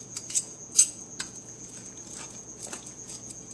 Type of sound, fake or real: fake